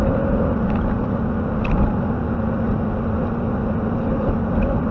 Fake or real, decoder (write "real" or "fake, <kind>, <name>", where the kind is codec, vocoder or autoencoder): real